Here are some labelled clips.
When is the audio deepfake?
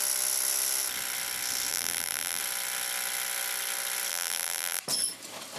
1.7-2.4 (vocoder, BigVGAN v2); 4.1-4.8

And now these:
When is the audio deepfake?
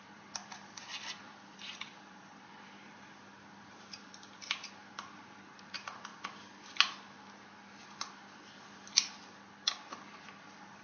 0.0-3.3 (vocoder, BigVGAN v2); 4.0-6.1; 9.5-10.8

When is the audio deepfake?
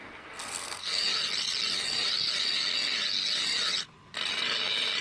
0.0-1.0 (codec, SNAC)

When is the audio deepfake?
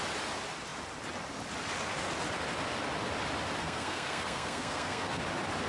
3.6-5.2 (codec, SNAC)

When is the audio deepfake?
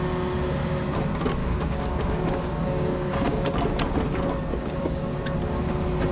1.4-3.5 (codec, DAC); 4.5-5.1